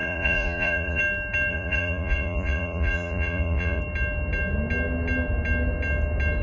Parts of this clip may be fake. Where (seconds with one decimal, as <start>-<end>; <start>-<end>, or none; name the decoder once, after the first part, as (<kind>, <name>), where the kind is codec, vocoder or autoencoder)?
0.0-1.0 (vocoder, Vocos); 1.5-3.8